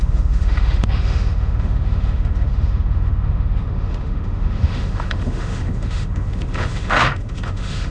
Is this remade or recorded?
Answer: remade